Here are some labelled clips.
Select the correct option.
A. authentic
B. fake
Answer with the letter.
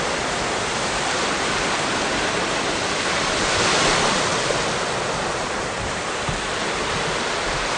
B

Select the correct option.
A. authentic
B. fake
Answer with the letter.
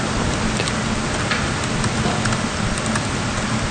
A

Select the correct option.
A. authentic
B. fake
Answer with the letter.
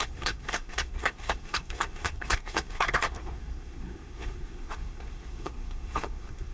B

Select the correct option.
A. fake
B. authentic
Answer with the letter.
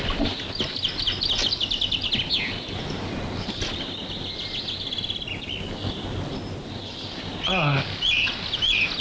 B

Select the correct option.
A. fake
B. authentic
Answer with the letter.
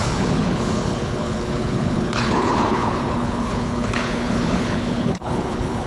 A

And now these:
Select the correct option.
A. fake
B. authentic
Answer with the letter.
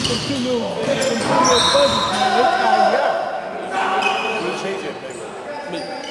B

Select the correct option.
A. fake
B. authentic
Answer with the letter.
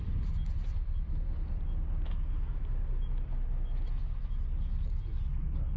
A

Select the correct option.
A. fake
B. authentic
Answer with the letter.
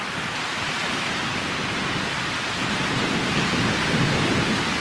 A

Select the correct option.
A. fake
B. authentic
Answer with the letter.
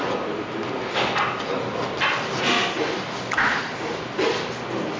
B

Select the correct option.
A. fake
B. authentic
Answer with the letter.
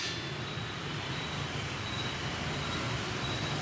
A